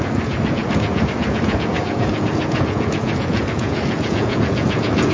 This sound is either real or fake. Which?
fake